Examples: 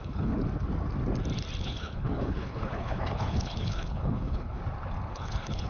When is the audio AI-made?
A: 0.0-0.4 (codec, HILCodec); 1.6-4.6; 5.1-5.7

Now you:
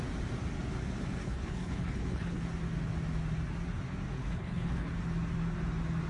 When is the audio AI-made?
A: 1.2-2.4 (codec, HILCodec); 4.2-4.9

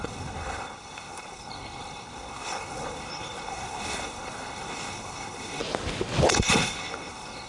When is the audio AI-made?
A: 0.0-5.6 (codec, HILCodec); 6.3-7.5